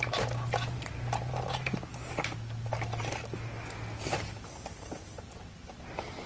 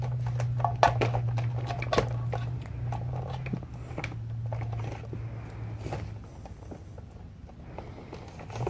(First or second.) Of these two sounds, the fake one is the first